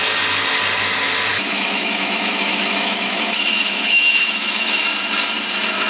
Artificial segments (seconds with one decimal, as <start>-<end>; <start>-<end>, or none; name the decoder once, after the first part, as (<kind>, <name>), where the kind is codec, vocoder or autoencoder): 1.3-4.8 (autoencoder, DAC-VAE)